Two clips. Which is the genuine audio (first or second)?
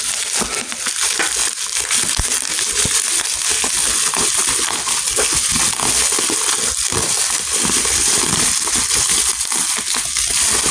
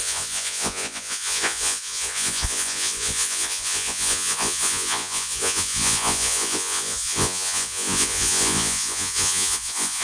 first